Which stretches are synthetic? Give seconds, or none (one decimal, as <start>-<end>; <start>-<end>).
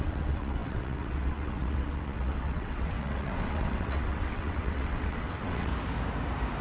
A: 0.0-5.7